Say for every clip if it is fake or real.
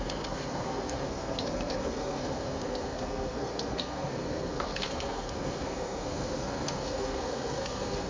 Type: fake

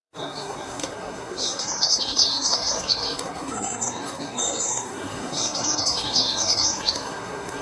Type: fake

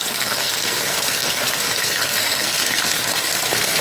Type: fake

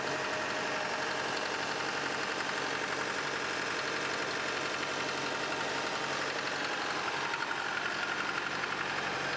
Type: real